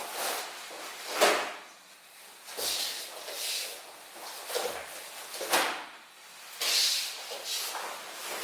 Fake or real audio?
real